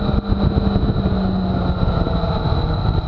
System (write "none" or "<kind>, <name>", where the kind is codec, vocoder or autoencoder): none